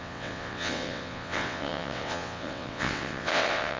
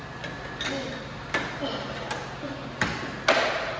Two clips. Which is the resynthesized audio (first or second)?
first